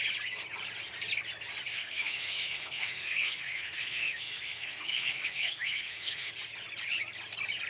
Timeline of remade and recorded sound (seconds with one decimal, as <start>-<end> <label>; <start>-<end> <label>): 0.0-1.7 recorded; 1.7-6.3 remade; 6.3-7.7 recorded